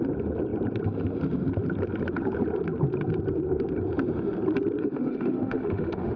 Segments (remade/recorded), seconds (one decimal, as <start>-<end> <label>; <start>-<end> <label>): 0.0-4.8 recorded; 4.8-6.2 remade